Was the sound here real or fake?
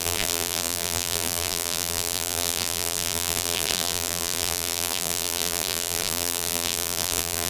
fake